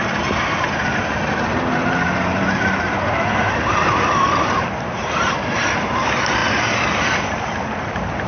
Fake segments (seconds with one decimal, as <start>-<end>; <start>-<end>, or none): 0.0-8.3

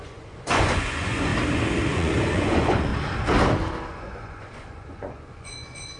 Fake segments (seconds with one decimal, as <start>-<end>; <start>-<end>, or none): 0.0-1.3; 1.9-2.9; 3.9-6.0

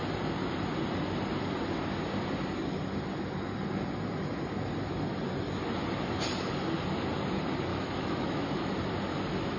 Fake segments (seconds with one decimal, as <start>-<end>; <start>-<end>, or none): 7.7-8.7

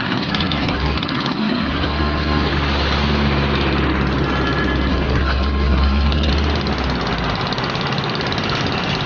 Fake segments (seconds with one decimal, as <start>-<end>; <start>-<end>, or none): 0.0-2.5; 4.9-6.3